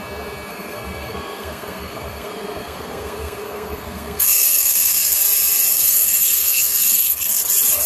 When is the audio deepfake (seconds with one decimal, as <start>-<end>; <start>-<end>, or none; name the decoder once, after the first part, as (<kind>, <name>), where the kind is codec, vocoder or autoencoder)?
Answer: 0.5-5.2 (codec, SNAC); 5.7-7.4